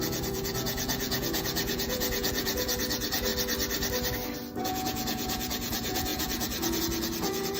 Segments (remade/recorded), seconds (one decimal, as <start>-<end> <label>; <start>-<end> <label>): 0.0-3.3 remade; 3.3-4.6 recorded; 4.6-7.6 remade

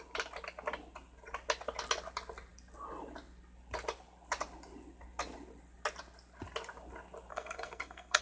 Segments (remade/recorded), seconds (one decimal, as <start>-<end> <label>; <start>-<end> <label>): 0.0-7.3 recorded; 7.3-8.2 remade